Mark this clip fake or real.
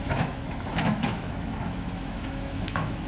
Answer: fake